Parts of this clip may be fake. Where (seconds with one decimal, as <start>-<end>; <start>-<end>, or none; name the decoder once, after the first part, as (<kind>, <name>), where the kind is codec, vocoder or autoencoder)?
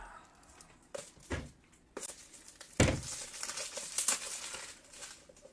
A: none